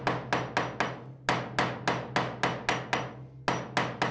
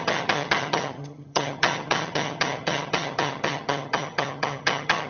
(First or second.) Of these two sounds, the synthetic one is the second